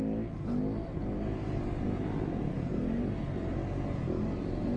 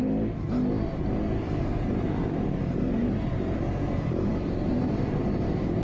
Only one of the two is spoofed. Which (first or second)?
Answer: second